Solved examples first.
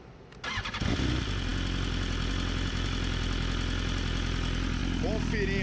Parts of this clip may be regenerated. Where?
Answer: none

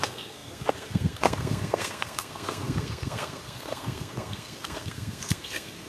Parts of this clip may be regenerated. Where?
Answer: 0.0-5.9 (codec, SNAC)

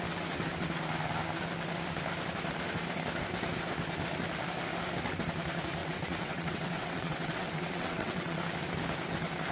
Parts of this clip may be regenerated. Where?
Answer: 5.8-8.4 (vocoder, WaveNeXt)

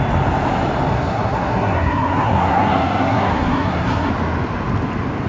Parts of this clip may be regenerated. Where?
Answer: 0.9-4.1 (codec, SNAC)

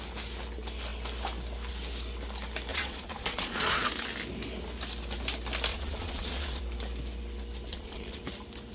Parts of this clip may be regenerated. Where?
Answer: 2.7-3.9 (vocoder, Vocos); 5.7-6.6; 7.7-8.2

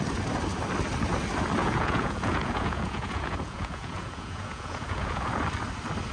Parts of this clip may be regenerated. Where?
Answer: 1.6-5.3 (vocoder, Vocos)